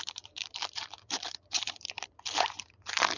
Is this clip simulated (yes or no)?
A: yes